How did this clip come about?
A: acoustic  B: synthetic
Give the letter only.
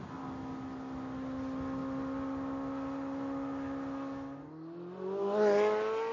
A